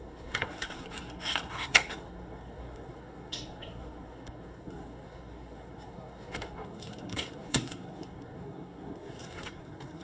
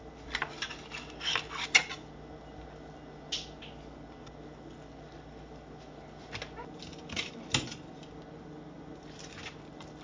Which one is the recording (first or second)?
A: second